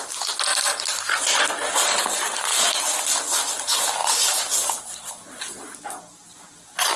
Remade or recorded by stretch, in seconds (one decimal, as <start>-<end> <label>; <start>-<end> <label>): 0.0-7.0 recorded